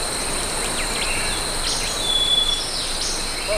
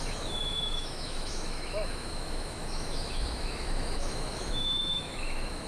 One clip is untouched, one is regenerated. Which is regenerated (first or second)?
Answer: second